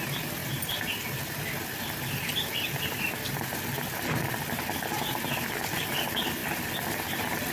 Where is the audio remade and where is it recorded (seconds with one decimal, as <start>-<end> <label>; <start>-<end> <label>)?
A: 0.0-7.5 recorded